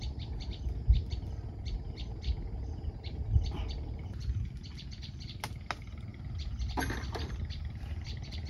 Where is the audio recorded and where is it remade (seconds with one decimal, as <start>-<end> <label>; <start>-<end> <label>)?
0.0-8.5 recorded